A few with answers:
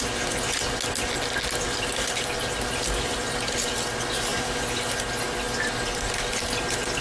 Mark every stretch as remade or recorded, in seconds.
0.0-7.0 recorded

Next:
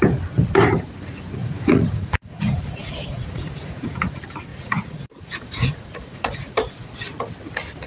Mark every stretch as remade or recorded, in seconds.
0.0-1.4 recorded; 1.4-4.1 remade; 4.1-4.5 recorded; 4.5-6.9 remade; 6.9-7.9 recorded

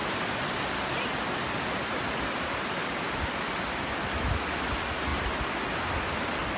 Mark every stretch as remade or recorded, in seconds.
0.0-6.6 recorded